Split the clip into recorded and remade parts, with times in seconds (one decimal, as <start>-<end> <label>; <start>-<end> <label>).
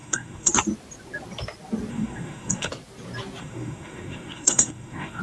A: 0.0-0.5 remade; 0.5-1.9 recorded; 1.9-2.7 remade; 2.7-3.4 recorded; 3.4-5.2 remade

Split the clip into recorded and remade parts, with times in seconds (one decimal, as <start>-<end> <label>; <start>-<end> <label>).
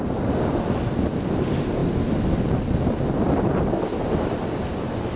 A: 0.0-5.2 recorded